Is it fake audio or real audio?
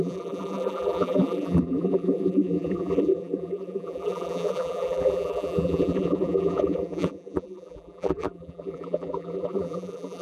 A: fake